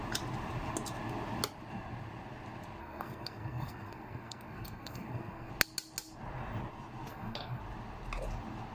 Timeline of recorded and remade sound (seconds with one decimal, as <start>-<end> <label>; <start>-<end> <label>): 0.0-2.8 recorded; 2.8-5.5 remade; 5.5-7.1 recorded; 7.1-7.6 remade; 7.6-8.7 recorded